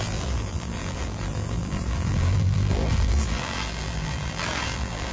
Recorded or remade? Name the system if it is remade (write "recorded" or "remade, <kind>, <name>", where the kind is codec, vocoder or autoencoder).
remade, vocoder, BigVGAN v2